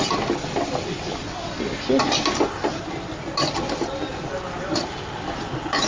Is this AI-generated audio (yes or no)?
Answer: no